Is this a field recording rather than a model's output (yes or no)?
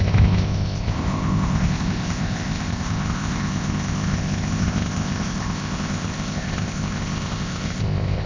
no